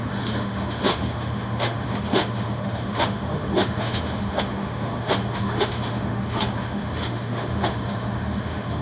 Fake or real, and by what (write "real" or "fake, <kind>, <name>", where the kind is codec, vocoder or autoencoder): fake, autoencoder, DAC-VAE